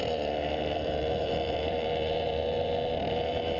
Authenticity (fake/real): fake